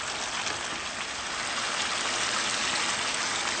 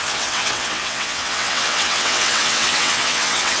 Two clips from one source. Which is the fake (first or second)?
second